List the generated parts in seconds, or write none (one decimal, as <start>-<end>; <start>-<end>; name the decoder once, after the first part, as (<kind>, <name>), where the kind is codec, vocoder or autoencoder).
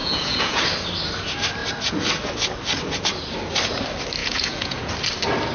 0.0-0.6 (vocoder, Vocos); 4.2-4.9